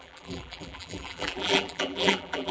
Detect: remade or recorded remade